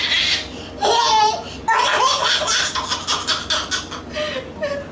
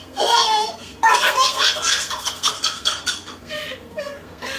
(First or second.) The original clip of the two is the first